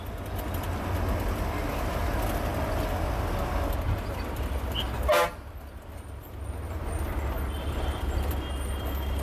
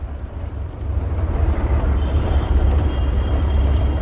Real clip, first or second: first